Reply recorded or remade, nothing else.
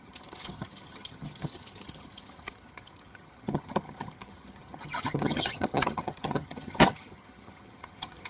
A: remade